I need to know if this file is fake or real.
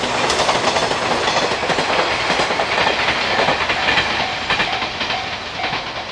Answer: real